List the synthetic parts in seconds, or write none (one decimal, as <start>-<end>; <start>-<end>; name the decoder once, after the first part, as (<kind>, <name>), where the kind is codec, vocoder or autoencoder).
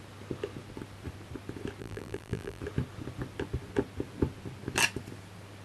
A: 1.8-2.6 (vocoder, BigVGAN v2)